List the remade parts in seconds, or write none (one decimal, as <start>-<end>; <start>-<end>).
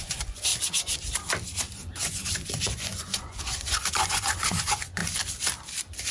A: 0.0-0.5; 2.0-5.0